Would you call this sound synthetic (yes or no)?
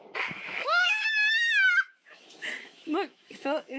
yes